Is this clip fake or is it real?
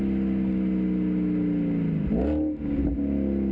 real